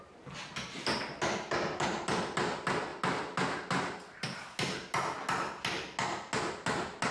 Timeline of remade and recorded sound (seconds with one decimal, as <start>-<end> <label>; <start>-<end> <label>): 0.0-7.1 recorded